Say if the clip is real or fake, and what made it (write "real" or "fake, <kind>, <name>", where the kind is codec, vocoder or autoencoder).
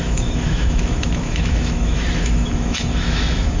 fake, autoencoder, DAC-VAE